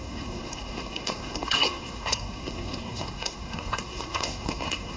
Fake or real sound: fake